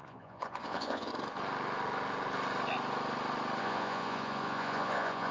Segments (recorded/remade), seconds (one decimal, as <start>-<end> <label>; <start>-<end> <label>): 0.0-1.1 remade; 1.1-3.6 recorded; 3.6-5.3 remade